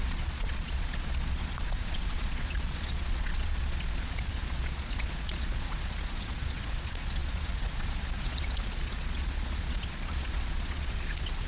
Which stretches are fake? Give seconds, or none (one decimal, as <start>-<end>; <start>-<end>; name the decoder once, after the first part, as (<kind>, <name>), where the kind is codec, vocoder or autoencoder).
0.0-11.5 (vocoder, Vocos)